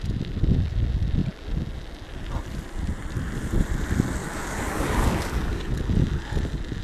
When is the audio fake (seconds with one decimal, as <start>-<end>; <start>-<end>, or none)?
4.2-5.7